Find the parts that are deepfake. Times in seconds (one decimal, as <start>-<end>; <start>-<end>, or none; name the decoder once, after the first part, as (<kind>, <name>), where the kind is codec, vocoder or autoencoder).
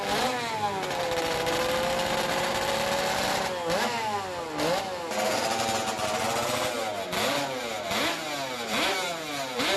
none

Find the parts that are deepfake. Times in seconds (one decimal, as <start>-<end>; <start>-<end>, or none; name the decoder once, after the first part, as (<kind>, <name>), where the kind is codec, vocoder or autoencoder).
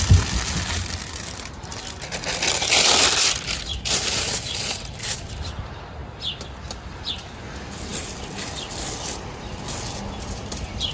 none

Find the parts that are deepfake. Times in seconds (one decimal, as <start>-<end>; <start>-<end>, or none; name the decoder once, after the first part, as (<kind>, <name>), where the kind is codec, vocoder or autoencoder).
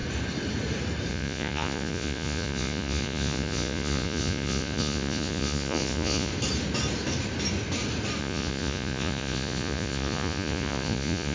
1.1-6.3 (vocoder, Vocos); 8.2-11.3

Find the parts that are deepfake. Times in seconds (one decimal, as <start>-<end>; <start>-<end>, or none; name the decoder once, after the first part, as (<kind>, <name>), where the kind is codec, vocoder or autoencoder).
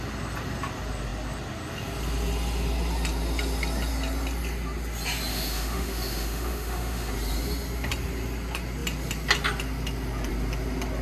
5.3-7.1 (autoencoder, DAC-VAE)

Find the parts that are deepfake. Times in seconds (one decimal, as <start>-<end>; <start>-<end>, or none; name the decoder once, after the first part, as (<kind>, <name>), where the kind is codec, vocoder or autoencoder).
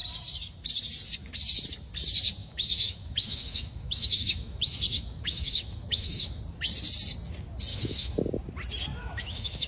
2.4-6.4 (autoencoder, DAC-VAE); 7.7-8.2; 9.0-9.7